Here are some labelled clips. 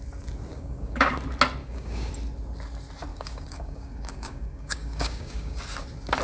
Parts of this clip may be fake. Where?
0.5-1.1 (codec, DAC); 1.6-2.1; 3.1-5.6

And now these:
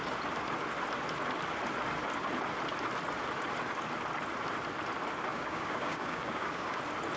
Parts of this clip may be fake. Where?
5.3-6.8 (codec, DAC)

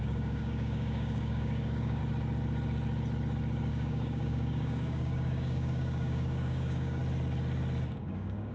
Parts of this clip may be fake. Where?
0.0-2.0 (codec, DAC); 3.7-7.0; 8.0-8.5

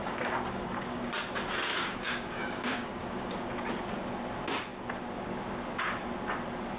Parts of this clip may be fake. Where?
0.0-1.1 (codec, DAC); 1.7-3.3

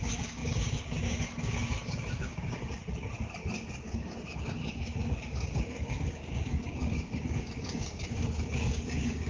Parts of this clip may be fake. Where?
0.0-2.8 (codec, DAC); 3.8-9.3